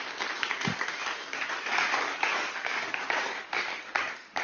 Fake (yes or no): yes